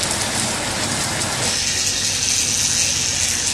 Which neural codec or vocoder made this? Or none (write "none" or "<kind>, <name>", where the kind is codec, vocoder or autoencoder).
none